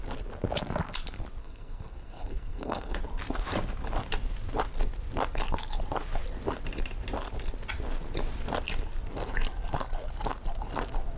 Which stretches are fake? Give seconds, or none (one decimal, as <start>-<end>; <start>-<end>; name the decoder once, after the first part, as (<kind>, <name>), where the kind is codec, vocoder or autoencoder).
1.4-3.0 (codec, SNAC)